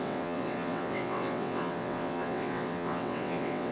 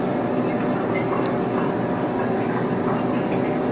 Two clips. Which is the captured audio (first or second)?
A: second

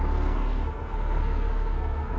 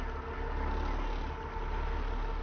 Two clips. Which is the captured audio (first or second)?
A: second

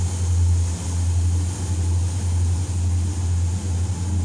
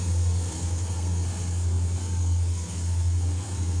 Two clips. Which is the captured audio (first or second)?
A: first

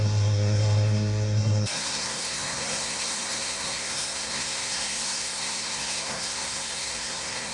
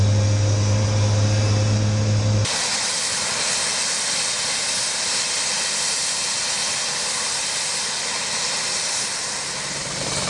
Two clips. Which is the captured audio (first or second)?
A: second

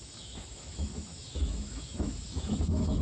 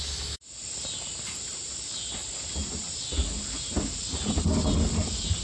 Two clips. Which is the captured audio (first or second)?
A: second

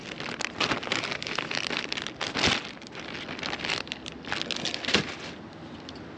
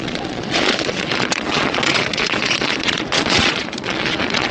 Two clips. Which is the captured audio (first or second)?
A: first